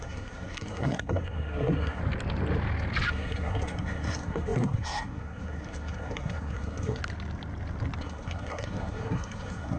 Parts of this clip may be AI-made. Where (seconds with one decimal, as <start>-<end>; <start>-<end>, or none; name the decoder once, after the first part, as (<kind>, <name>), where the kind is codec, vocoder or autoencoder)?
0.0-2.0 (codec, SNAC); 3.1-7.0; 8.0-9.8

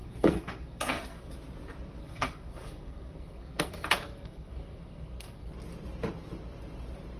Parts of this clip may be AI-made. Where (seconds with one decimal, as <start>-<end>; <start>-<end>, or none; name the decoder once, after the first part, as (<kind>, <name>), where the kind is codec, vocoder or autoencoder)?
0.0-1.3 (codec, SNAC); 2.0-5.5